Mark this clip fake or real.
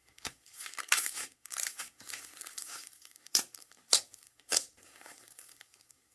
fake